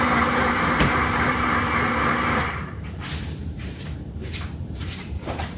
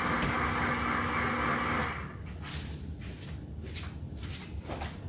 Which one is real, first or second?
second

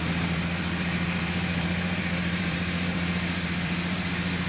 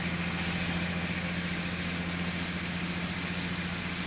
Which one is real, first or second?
second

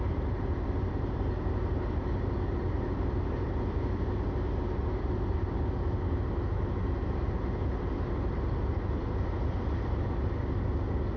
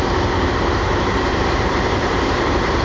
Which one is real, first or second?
first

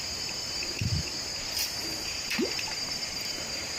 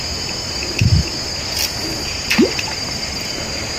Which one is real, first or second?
second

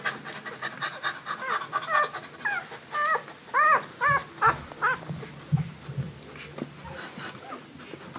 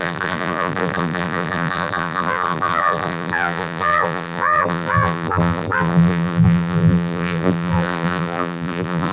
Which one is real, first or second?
first